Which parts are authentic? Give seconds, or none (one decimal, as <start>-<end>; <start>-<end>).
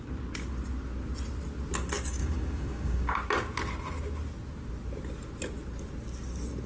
0.0-2.2; 3.1-6.7